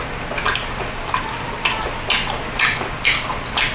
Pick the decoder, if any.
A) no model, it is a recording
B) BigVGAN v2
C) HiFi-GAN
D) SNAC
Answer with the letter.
A